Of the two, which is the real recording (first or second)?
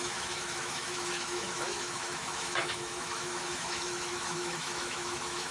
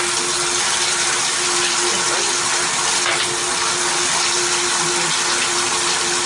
second